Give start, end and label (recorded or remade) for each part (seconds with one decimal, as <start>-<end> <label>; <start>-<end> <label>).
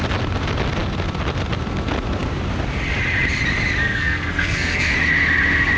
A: 0.0-3.8 recorded; 3.8-4.9 remade; 4.9-5.8 recorded